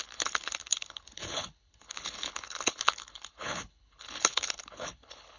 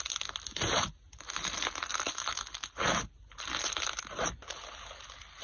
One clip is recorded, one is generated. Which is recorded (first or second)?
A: second